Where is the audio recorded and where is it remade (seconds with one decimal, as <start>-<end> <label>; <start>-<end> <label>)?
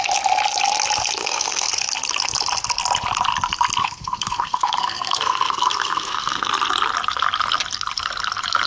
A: 0.0-1.2 recorded; 1.2-1.7 remade; 1.7-3.8 recorded; 3.8-6.5 remade; 6.5-8.7 recorded